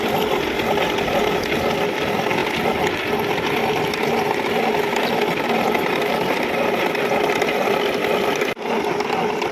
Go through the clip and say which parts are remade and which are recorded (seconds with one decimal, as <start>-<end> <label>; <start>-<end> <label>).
0.0-9.5 recorded